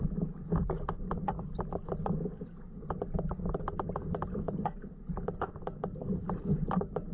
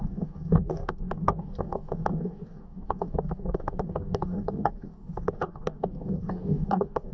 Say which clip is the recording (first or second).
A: first